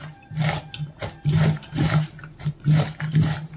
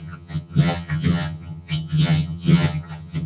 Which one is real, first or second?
first